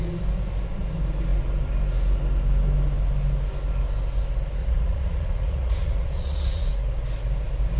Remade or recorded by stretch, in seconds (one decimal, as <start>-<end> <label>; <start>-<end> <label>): 0.0-4.6 recorded; 4.6-6.7 remade; 6.7-7.8 recorded